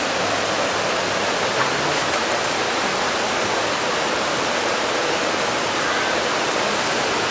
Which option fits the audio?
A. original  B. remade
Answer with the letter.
A